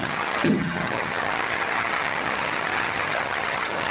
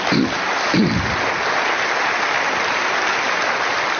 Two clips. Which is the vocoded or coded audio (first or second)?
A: first